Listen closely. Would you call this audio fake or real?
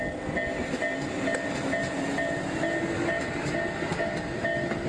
real